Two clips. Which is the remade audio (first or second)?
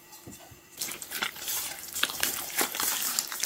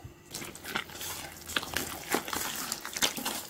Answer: first